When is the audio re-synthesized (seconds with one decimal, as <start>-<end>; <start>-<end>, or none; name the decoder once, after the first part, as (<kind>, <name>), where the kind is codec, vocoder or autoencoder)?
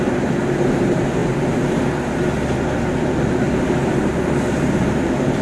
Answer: none